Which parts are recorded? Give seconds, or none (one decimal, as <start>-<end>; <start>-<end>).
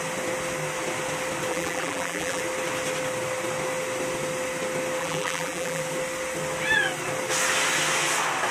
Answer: 0.0-1.5; 2.4-5.0; 5.8-8.5